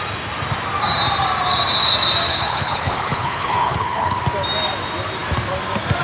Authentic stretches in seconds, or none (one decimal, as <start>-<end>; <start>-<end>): 0.0-2.3; 4.2-6.0